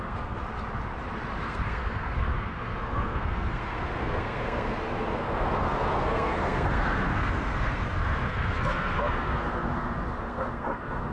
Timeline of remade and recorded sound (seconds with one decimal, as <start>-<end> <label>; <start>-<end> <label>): 0.0-0.4 remade; 0.4-1.4 recorded; 1.4-11.1 remade